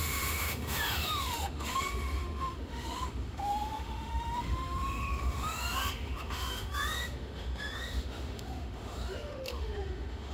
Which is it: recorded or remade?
remade